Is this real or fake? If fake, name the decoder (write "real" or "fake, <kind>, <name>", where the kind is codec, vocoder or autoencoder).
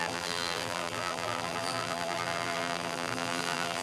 fake, vocoder, BigVGAN v2